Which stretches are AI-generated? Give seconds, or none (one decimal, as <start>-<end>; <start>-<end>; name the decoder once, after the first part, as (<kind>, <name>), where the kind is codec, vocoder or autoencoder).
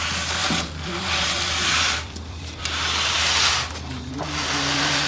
0.4-3.5 (vocoder, BigVGAN v2)